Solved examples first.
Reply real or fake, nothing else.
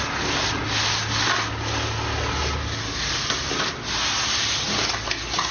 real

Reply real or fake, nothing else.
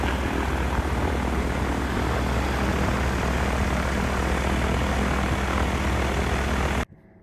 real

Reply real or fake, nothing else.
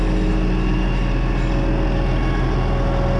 real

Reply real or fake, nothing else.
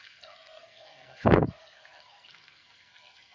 fake